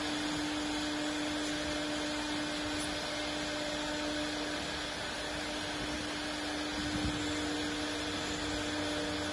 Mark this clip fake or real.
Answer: real